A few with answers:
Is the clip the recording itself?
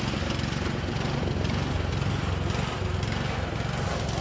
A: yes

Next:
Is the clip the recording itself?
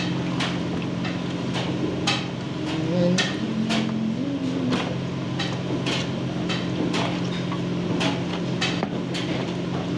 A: yes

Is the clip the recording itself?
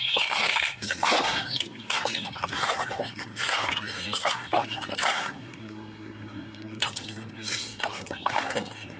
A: no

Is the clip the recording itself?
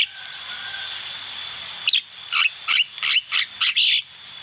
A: yes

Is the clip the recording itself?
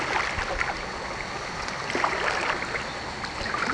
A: yes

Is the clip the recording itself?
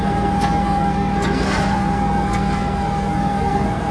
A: no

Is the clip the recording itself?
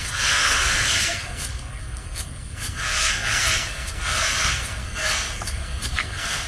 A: no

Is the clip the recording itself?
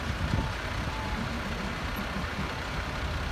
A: yes